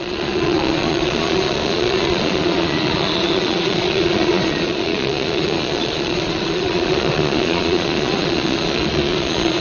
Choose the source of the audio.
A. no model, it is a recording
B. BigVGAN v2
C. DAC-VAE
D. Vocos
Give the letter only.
D